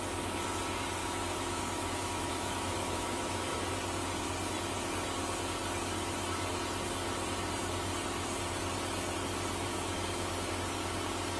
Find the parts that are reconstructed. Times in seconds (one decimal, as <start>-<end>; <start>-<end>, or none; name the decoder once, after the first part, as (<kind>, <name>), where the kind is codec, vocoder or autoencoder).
1.0-3.4 (autoencoder, DAC-VAE); 9.7-10.3